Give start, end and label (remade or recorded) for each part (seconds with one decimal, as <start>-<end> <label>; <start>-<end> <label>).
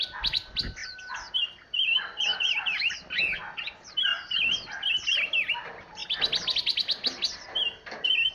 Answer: 0.0-8.3 recorded